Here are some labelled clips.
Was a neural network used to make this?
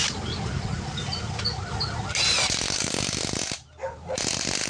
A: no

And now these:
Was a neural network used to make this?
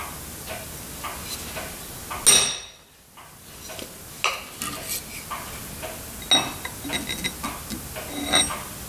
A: no